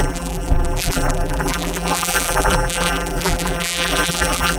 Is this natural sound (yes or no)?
no